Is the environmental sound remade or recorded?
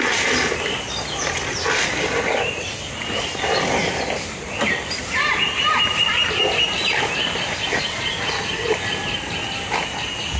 recorded